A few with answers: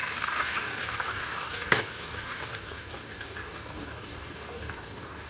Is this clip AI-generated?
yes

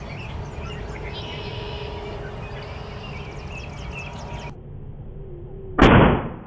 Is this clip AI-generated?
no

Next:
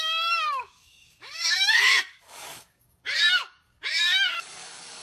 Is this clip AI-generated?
yes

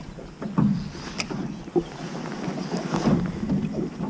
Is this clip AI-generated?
no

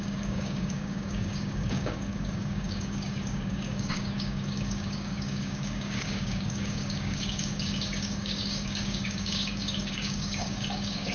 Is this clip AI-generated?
yes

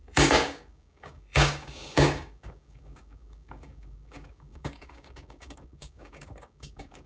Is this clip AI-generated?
yes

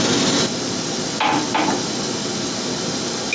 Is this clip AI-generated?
no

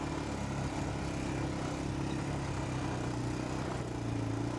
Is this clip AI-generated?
no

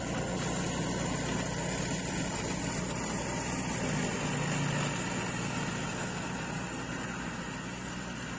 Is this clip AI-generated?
no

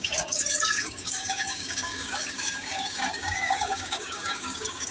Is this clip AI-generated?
yes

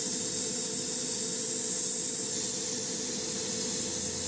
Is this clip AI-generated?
no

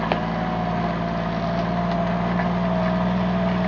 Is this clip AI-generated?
no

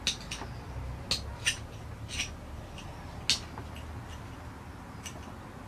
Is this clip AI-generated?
no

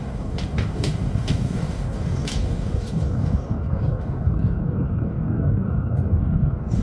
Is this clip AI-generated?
yes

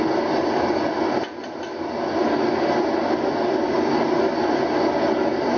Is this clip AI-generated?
no